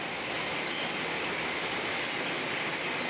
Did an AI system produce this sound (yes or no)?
no